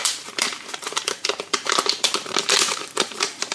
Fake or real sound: fake